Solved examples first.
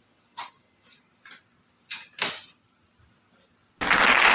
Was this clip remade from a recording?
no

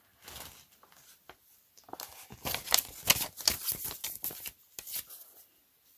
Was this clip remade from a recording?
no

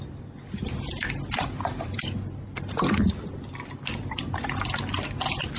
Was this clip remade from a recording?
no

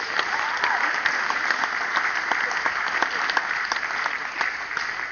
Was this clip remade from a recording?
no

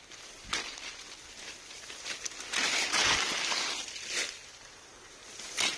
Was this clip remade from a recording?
no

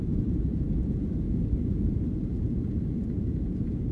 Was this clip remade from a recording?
yes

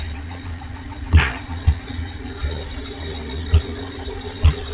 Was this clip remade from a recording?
yes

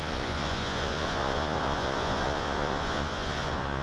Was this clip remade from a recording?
yes